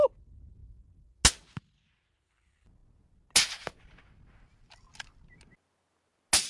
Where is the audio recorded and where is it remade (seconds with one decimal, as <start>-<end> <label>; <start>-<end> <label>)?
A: 0.0-6.5 recorded